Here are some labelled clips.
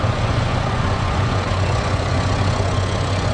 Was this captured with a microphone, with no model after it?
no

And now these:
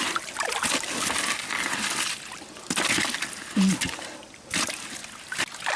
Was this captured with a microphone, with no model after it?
yes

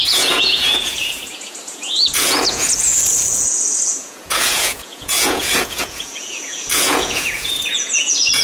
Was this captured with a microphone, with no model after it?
no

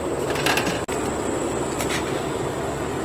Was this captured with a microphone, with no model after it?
yes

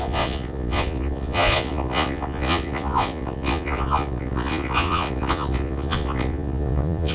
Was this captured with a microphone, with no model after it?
no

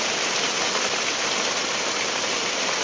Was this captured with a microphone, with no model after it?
yes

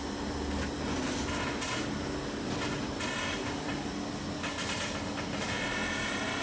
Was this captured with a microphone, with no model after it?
yes